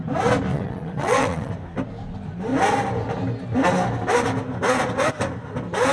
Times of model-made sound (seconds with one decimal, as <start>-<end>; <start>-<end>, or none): 0.5-1.5